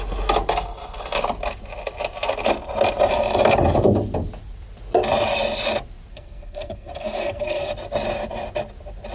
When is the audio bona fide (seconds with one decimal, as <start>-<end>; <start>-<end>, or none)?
0.0-6.1; 7.7-9.1